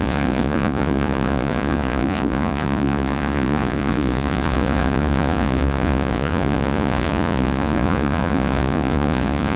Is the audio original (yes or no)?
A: no